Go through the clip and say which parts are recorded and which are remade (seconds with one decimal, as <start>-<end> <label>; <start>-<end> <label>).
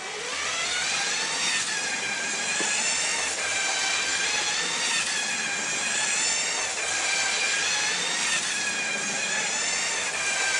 0.0-10.6 recorded